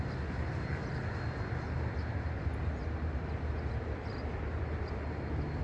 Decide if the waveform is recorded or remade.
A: recorded